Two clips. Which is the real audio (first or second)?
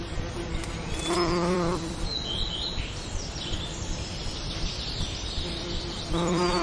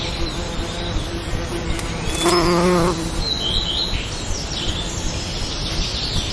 second